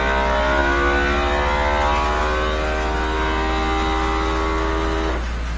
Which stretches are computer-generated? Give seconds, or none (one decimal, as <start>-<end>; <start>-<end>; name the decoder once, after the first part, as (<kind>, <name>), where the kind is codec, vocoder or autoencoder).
none